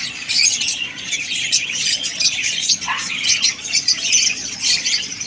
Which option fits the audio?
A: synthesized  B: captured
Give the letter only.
A